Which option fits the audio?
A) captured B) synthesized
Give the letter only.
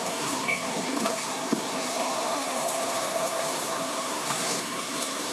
B